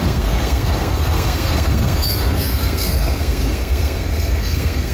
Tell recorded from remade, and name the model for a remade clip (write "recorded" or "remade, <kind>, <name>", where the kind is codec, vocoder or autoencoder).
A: remade, codec, SNAC